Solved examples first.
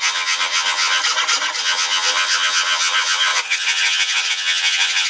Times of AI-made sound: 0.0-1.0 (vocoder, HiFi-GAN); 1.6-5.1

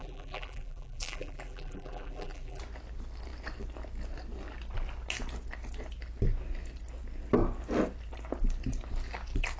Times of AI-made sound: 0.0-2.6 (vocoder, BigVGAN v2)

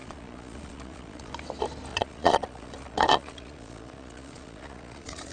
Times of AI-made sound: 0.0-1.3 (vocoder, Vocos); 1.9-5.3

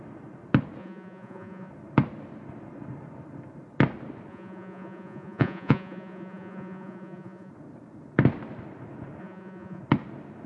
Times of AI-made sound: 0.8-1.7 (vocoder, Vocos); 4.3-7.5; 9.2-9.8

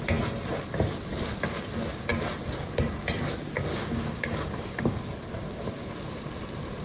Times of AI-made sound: 3.7-5.0 (codec, DAC)

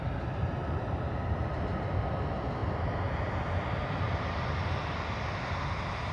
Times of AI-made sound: none

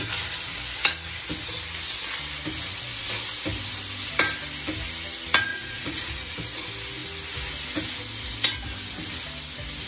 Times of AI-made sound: 5.5-6.3 (vocoder, Vocos)